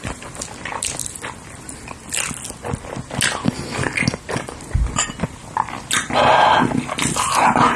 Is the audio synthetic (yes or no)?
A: no